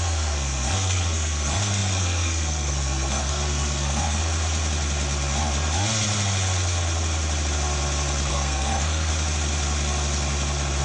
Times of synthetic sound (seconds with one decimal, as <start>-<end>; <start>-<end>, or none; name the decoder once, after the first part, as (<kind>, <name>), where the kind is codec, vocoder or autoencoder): 0.0-4.2 (codec, SNAC); 8.3-9.1